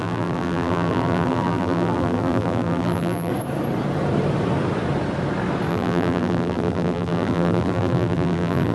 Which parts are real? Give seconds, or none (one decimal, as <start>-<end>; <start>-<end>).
3.3-5.7